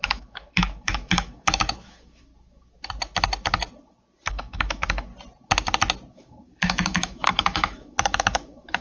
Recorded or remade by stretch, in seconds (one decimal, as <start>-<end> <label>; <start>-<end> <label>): 0.0-2.3 remade; 2.3-4.3 recorded; 4.3-5.1 remade; 5.1-6.1 recorded; 6.1-8.8 remade